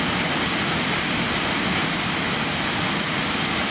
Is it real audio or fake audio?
real